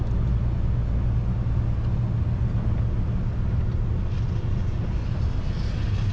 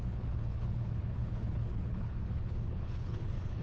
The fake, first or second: second